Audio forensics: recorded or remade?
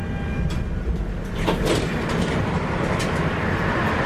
recorded